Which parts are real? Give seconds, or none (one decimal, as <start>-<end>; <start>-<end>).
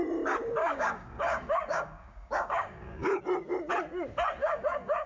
0.0-0.6; 3.2-4.4